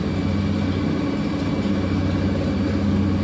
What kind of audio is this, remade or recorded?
recorded